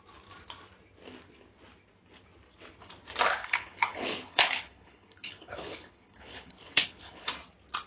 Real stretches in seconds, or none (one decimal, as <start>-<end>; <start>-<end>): 0.0-3.4; 7.3-7.9